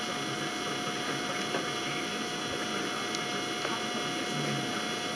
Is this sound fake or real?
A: real